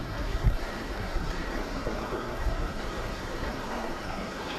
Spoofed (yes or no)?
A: yes